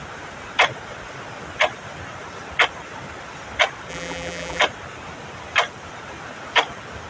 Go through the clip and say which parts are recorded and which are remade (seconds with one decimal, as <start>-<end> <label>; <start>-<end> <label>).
0.0-3.9 recorded; 3.9-4.6 remade; 4.6-7.1 recorded